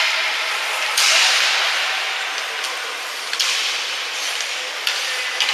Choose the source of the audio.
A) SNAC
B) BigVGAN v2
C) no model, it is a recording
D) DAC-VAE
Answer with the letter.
C